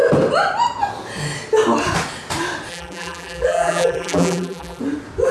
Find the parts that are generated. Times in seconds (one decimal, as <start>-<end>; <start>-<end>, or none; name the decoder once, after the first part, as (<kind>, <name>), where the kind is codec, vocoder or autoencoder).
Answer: 2.7-4.8 (vocoder, BigVGAN v2)